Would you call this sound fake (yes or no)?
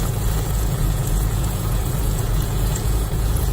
yes